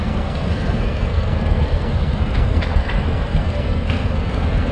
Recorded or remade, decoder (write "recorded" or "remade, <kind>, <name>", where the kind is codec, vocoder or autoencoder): remade, codec, SNAC